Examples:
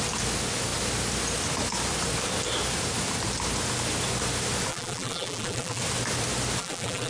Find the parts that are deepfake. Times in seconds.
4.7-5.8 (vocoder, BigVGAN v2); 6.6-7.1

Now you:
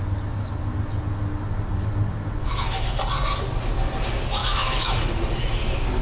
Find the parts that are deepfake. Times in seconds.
2.4-3.0 (autoencoder, DAC-VAE); 4.4-5.0

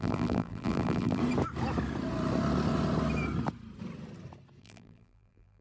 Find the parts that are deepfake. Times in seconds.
0.0-1.2 (vocoder, BigVGAN v2); 4.6-5.6

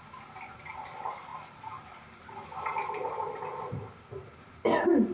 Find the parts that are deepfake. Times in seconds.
none

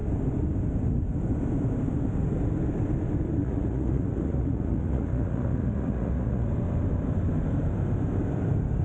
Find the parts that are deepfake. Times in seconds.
3.4-6.5 (vocoder, Vocos)

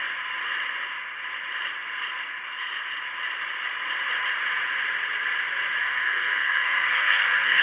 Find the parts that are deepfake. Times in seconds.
5.8-7.6 (codec, SNAC)

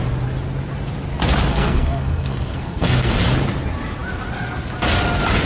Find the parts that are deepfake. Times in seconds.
1.5-3.1 (codec, SNAC)